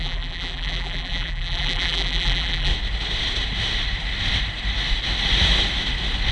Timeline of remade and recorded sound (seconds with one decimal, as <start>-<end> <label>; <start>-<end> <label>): 0.0-2.7 remade; 2.7-6.3 recorded